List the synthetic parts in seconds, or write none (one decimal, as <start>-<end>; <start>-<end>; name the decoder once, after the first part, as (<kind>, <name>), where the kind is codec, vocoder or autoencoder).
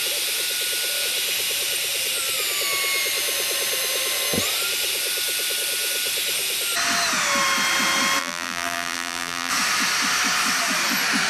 8.2-9.5 (vocoder, BigVGAN v2)